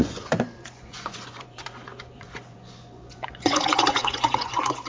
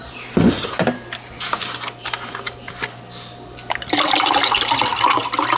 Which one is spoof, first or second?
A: first